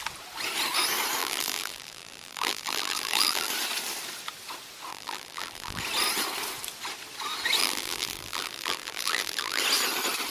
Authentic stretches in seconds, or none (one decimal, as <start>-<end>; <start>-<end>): 0.0-1.2; 3.5-4.9; 5.8-7.6; 9.6-10.3